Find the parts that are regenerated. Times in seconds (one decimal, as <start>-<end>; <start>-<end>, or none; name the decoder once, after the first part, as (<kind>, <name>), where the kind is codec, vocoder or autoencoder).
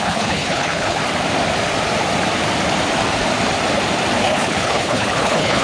0.0-1.0 (codec, HILCodec); 4.2-5.6